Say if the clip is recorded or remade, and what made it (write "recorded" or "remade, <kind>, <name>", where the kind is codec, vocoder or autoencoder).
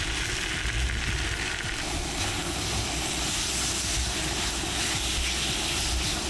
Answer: recorded